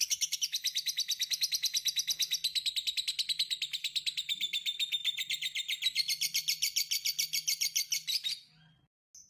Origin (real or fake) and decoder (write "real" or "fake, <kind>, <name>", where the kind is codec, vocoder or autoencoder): real